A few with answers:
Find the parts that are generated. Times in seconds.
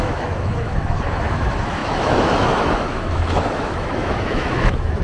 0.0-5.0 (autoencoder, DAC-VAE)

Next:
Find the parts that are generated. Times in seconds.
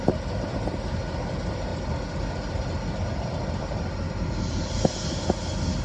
none